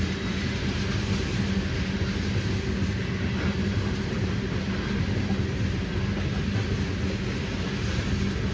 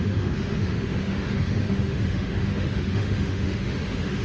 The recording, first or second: first